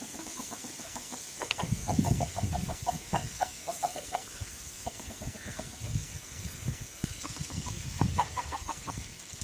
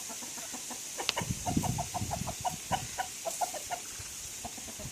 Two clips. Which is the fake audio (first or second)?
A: first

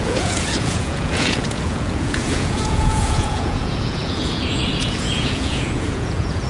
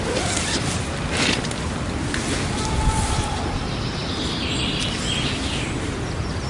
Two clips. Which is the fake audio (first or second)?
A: first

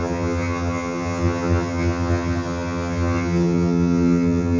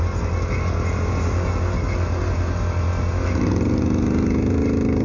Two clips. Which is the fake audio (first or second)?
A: first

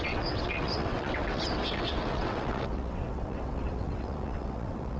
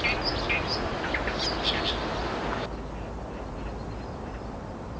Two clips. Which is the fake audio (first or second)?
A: first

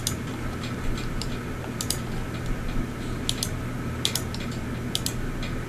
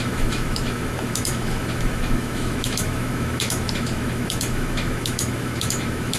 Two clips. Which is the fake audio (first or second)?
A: second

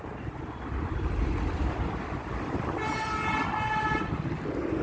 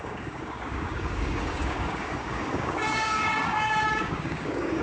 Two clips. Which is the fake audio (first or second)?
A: second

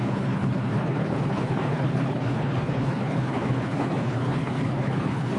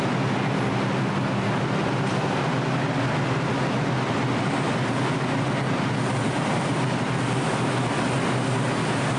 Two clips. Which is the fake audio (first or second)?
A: first